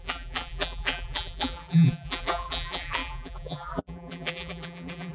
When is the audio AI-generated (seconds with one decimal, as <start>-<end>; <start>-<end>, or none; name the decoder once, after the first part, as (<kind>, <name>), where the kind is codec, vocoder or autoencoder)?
0.0-5.1 (vocoder, BigVGAN v2)